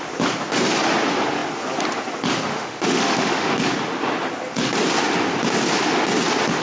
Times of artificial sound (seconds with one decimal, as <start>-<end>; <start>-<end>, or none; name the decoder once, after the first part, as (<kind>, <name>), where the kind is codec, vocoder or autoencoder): 2.5-3.5 (autoencoder, DAC-VAE)